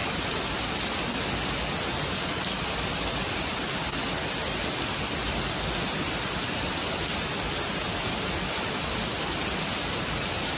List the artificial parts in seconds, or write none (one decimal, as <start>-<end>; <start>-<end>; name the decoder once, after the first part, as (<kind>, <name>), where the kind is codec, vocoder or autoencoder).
none